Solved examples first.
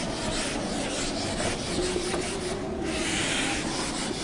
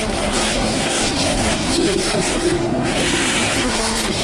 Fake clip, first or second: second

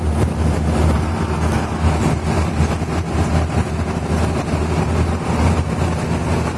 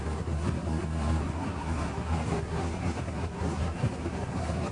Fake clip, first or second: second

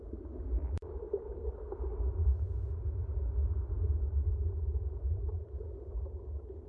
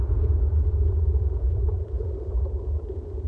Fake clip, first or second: second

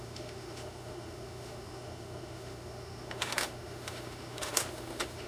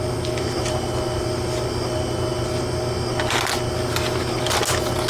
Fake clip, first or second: first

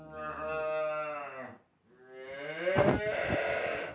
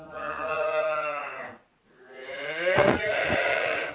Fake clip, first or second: second